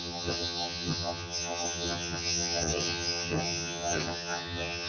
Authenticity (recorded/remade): remade